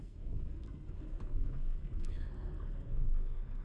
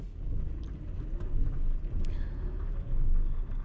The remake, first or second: first